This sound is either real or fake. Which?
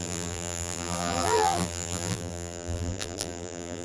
fake